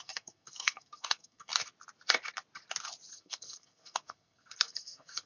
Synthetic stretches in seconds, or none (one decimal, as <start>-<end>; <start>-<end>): 0.0-1.5; 3.1-5.3